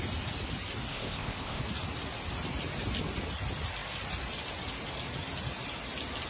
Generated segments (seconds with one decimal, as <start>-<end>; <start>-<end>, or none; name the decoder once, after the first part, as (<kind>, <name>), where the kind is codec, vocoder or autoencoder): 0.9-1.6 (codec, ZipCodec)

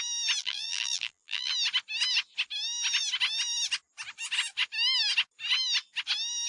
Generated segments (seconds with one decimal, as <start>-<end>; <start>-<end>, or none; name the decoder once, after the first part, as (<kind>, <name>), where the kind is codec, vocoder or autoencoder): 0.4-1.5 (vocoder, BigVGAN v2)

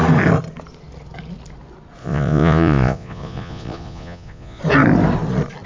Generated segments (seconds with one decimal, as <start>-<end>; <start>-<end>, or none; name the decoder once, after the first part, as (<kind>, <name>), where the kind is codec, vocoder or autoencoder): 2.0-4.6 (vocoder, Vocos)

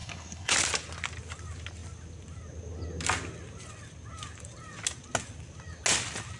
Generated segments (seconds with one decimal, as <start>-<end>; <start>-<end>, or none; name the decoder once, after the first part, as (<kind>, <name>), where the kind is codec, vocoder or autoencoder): 0.0-0.5 (codec, SNAC)